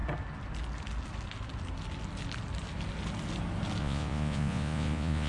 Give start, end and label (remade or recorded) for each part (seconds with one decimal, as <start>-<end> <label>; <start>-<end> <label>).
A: 0.0-3.8 recorded; 3.8-5.3 remade